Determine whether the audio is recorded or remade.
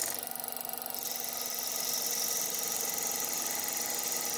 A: recorded